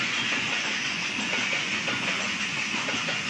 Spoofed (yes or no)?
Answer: yes